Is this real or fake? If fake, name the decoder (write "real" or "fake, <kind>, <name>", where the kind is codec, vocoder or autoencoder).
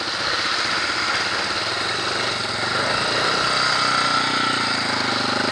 real